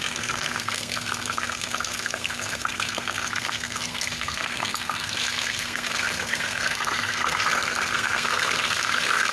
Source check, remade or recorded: remade